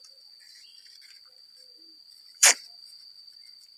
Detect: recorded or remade remade